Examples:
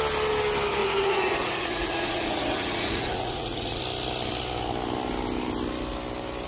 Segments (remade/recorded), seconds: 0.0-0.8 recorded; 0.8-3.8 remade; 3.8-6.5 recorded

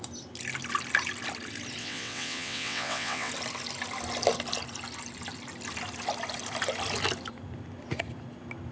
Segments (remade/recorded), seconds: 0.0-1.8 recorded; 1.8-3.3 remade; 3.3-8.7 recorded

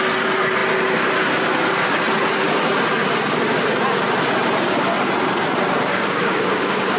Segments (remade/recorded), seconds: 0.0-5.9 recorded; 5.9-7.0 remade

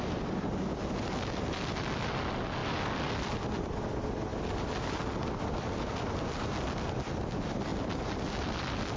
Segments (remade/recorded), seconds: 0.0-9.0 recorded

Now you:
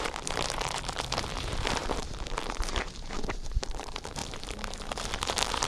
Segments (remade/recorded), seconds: 0.0-5.7 remade

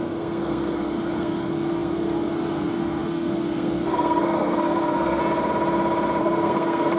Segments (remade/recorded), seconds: 0.0-5.2 remade; 5.2-6.2 recorded; 6.2-7.0 remade

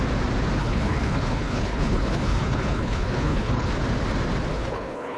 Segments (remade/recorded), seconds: 0.0-0.6 recorded; 0.6-3.7 remade; 3.7-4.5 recorded; 4.5-5.2 remade

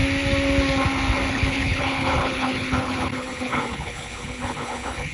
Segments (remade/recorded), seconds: 0.0-1.3 recorded; 1.3-5.1 remade